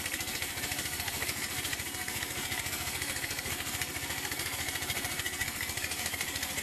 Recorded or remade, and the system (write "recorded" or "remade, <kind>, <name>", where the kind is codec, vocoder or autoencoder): remade, codec, SNAC